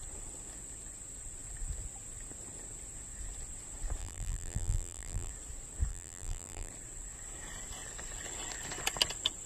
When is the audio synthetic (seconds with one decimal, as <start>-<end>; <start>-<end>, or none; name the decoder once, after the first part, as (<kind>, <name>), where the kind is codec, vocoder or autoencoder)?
4.0-5.3 (vocoder, BigVGAN v2); 5.9-6.7